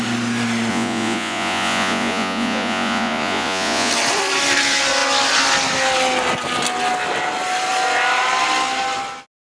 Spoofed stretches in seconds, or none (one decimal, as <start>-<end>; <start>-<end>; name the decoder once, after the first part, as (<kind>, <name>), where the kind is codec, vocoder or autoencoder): 0.7-3.9 (vocoder, Vocos)